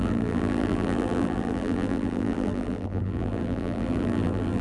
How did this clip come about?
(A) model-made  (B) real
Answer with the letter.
A